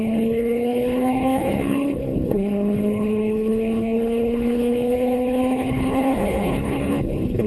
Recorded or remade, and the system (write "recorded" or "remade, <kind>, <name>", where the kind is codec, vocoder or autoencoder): remade, codec, HILCodec